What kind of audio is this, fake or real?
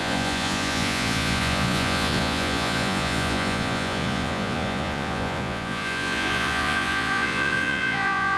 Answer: fake